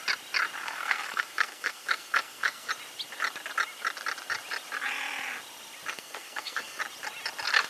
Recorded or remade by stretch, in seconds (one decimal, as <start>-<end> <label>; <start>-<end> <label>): 0.0-0.6 recorded; 0.6-2.7 remade; 2.7-5.9 recorded; 5.9-6.8 remade; 6.8-7.7 recorded